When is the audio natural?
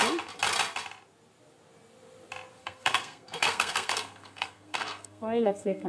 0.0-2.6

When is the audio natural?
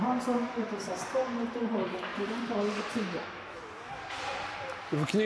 0.0-0.4; 0.9-3.2; 3.9-5.3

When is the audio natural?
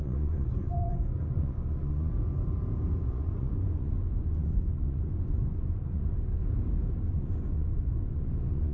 2.1-3.1; 6.4-7.1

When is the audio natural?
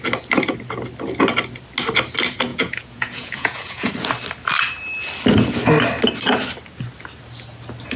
0.0-2.5; 3.9-8.0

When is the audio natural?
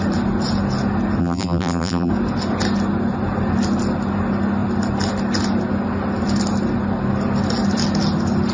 0.0-1.2; 2.1-8.5